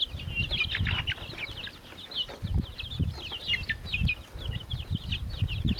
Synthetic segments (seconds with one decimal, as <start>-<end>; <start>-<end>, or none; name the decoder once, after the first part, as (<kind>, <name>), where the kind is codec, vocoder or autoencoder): none